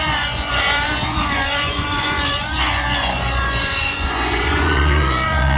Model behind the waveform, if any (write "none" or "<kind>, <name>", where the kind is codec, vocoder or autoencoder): vocoder, Vocos